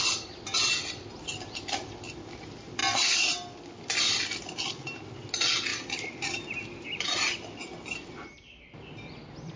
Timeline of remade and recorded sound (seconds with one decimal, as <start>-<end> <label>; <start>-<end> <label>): 0.0-9.6 recorded